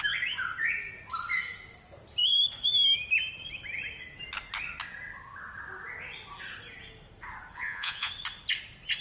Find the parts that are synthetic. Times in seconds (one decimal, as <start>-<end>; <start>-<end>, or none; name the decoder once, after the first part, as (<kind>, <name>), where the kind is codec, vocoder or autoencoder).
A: 7.5-8.1 (vocoder, Vocos)